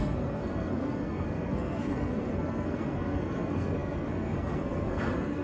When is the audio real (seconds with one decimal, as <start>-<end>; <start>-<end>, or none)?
none